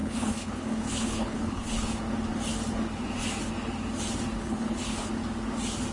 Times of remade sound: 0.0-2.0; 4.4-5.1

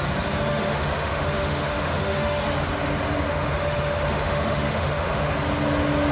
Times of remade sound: 0.5-2.4; 3.3-5.3

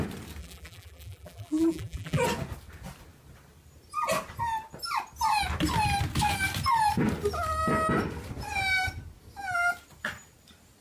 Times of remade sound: 0.4-2.2

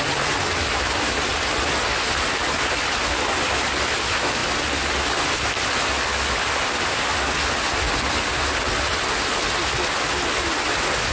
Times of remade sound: none

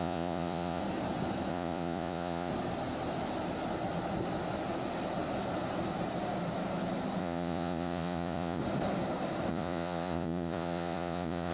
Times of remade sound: 0.0-0.8; 1.5-2.5; 7.2-8.6; 9.5-11.5

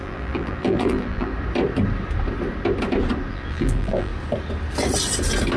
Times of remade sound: 0.0-1.3; 3.3-4.1